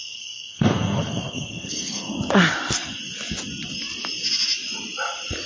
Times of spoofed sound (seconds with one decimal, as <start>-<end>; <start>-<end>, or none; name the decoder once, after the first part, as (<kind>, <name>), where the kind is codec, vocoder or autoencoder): 0.0-2.1 (codec, SNAC)